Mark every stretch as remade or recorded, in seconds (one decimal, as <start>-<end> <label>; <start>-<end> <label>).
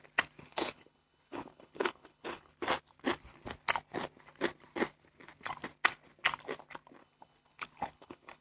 0.0-0.4 recorded; 0.4-2.5 remade; 2.5-7.0 recorded; 7.0-8.4 remade